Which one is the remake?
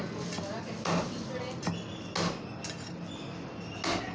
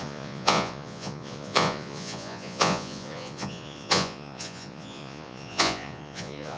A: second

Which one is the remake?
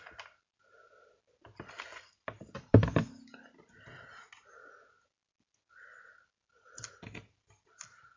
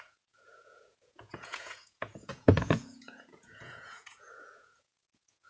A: second